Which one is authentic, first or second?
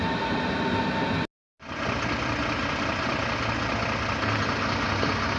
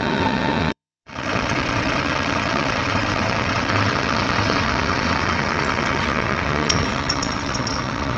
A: first